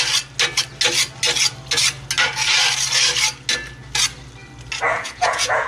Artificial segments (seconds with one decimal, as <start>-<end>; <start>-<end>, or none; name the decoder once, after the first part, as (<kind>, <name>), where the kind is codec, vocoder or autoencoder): 4.9-5.7 (vocoder, Vocos)